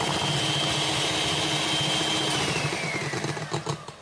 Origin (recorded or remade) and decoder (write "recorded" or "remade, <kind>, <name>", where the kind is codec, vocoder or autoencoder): recorded